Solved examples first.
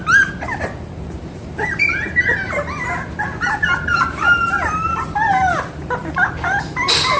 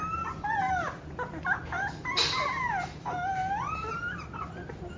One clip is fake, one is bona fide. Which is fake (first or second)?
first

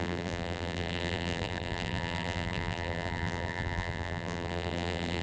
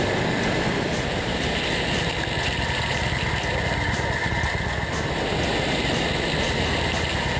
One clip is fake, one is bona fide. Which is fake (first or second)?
first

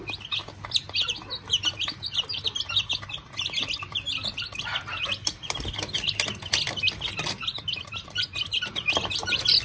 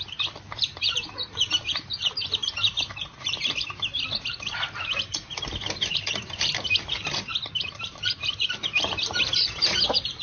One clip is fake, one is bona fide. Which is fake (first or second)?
second